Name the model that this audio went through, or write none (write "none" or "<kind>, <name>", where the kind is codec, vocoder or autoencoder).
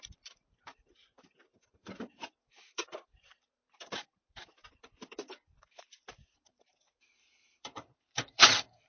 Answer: vocoder, BigVGAN v2